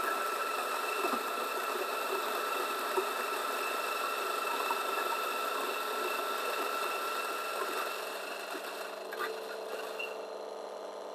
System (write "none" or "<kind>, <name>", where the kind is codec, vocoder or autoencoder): none